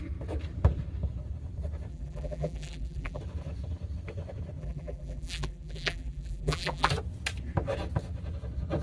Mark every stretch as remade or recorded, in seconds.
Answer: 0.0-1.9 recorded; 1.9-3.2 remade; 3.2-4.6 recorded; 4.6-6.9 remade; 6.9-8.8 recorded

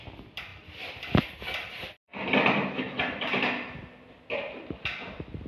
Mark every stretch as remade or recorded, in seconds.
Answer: 0.0-5.5 recorded